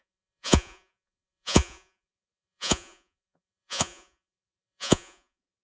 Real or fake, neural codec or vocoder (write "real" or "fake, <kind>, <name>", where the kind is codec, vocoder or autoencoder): fake, vocoder, Vocos